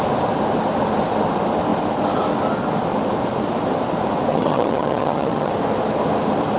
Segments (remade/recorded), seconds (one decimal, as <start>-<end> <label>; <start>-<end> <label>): 0.0-4.3 recorded; 4.3-5.5 remade; 5.5-6.6 recorded